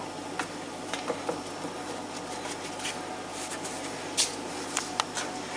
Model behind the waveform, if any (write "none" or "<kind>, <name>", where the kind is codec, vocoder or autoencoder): none